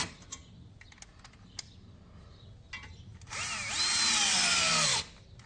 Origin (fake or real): real